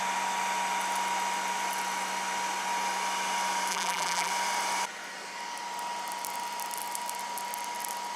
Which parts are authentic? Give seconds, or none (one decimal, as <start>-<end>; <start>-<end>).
0.0-3.7; 4.3-8.2